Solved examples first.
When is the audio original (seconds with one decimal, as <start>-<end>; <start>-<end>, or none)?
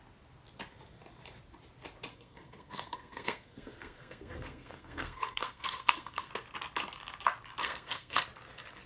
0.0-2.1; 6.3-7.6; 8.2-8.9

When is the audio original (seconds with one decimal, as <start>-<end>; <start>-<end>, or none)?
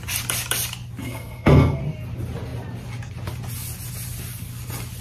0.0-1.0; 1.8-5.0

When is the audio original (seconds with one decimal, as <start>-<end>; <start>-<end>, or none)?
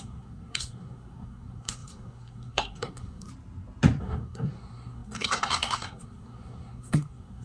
3.3-4.0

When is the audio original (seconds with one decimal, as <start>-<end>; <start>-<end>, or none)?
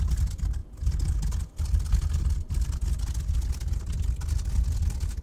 0.0-5.2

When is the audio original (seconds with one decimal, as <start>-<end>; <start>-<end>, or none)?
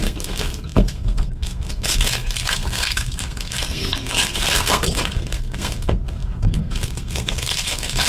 none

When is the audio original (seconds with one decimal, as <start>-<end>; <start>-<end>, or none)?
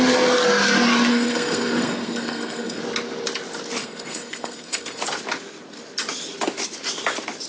0.0-1.1; 2.8-3.8; 5.0-7.5